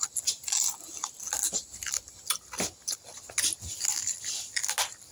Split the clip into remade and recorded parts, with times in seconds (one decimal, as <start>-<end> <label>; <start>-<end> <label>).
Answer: 0.0-5.1 recorded